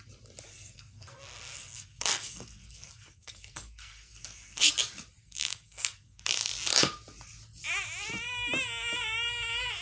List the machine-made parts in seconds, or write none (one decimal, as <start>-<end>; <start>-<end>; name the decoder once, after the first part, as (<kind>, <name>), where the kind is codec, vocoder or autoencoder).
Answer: 0.5-4.7 (codec, SNAC); 5.2-6.5